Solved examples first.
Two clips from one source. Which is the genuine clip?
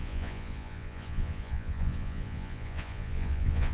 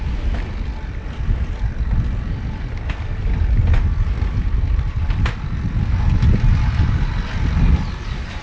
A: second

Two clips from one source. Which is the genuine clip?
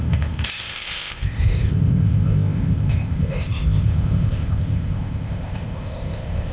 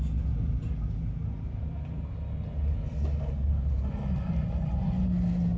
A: second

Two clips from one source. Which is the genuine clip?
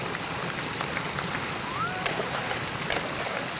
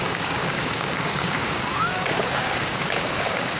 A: first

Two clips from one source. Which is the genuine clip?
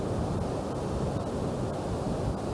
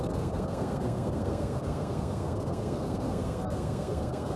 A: first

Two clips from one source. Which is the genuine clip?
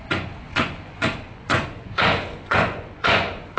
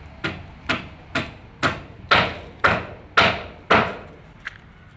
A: second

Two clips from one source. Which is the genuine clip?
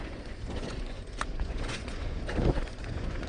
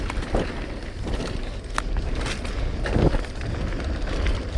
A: second